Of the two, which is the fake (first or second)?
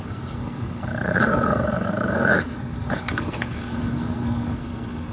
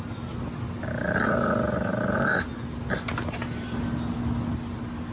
first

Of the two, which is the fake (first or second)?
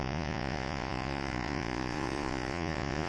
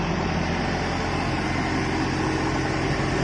first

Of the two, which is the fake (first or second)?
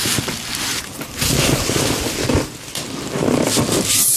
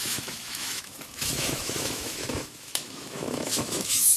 second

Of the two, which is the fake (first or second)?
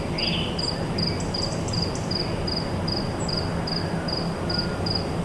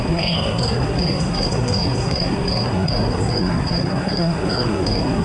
second